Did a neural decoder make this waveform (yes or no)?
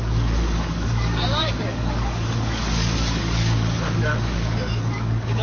yes